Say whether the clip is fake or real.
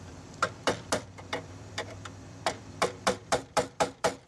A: fake